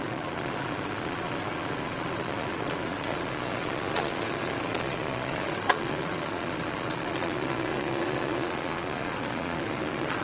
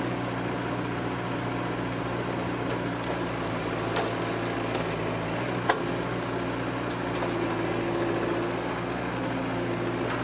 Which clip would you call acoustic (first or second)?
second